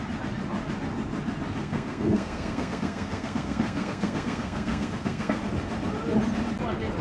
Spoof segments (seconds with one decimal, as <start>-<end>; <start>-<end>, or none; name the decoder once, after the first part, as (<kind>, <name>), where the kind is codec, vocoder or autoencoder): 1.6-5.4 (codec, SNAC)